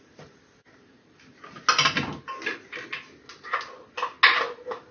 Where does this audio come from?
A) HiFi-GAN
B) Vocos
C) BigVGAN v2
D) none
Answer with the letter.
D